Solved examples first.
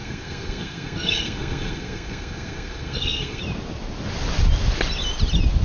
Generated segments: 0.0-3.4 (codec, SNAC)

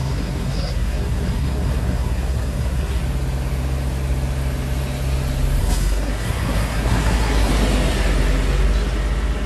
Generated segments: 0.0-3.0 (codec, SNAC); 5.6-7.5

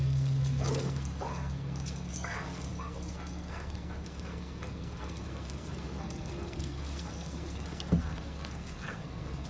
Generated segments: 0.0-9.5 (codec, SNAC)

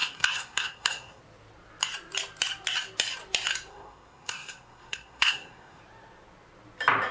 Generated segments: 0.0-1.2 (codec, SNAC); 3.7-5.8